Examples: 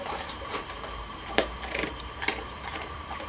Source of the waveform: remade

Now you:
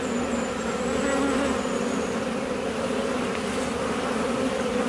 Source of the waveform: remade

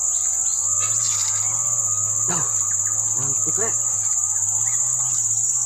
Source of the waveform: recorded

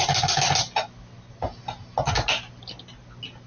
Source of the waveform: recorded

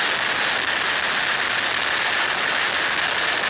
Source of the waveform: recorded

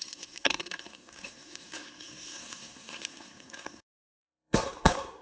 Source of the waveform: remade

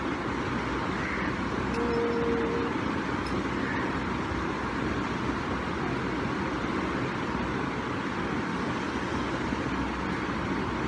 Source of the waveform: recorded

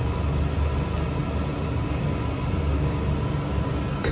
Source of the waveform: recorded